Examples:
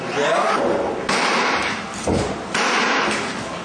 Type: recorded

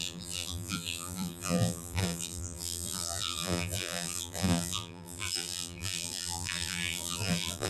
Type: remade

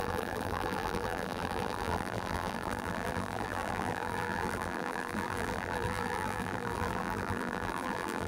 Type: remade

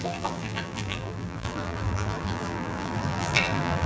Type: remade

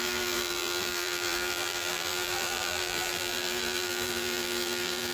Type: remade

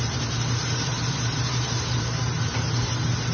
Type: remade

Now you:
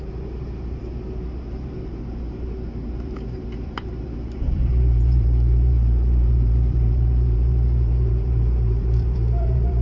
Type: remade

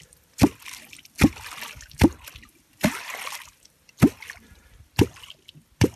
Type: recorded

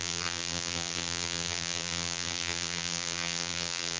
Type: remade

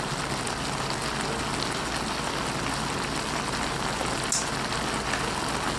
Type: recorded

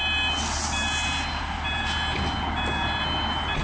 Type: recorded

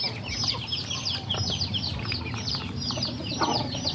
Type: remade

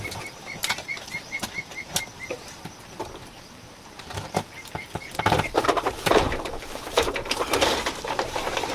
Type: remade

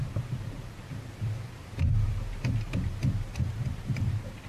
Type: remade